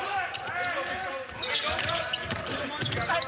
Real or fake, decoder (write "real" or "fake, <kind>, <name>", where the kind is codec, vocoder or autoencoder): fake, vocoder, BigVGAN v2